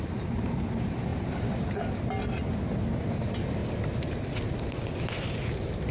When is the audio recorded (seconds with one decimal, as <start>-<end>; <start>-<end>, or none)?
0.0-5.9